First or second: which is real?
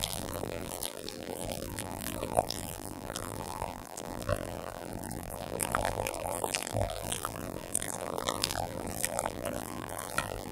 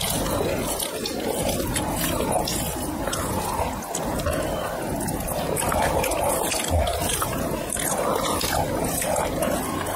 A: second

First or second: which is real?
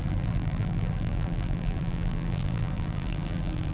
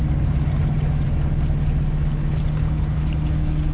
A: second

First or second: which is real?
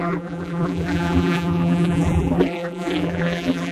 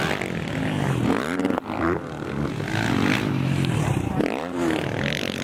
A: second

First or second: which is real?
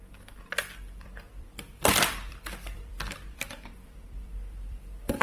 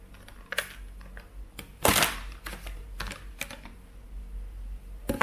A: second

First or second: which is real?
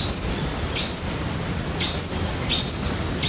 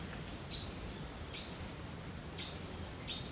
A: first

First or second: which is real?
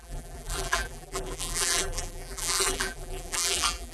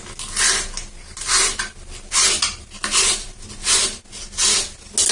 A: second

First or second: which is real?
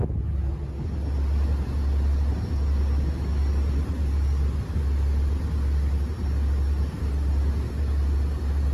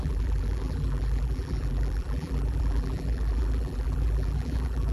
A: first